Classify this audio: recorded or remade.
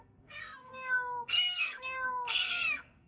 remade